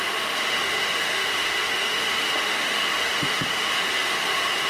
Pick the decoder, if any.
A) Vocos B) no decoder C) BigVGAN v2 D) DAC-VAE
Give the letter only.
D